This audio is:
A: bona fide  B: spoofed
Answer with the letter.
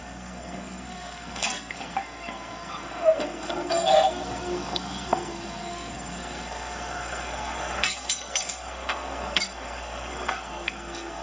B